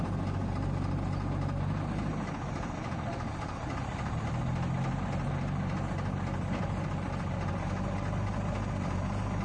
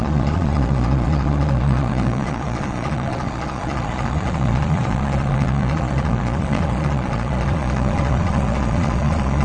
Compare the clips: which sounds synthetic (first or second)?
second